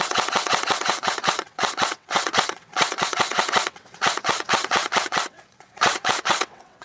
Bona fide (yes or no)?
no